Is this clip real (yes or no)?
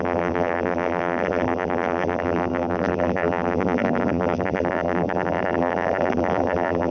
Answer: no